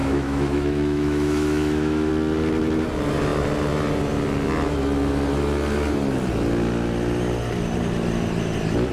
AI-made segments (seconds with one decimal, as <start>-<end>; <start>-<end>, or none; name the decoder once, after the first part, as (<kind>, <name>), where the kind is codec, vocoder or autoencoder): 0.0-2.1 (autoencoder, DAC-VAE)